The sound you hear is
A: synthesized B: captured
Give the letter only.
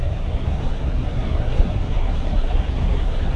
A